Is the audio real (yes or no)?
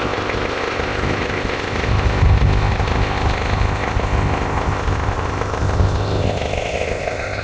no